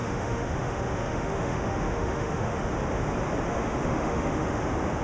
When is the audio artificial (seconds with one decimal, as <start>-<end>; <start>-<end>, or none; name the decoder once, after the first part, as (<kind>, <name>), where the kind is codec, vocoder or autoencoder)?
0.0-2.7 (autoencoder, DAC-VAE); 3.5-4.6